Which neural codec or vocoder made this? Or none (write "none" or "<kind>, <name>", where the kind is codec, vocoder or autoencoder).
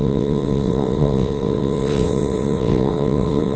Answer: vocoder, WaveNeXt